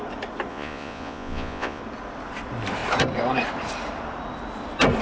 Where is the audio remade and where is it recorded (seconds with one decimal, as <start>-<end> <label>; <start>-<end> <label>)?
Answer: 0.0-0.5 recorded; 0.5-1.8 remade; 1.8-5.0 recorded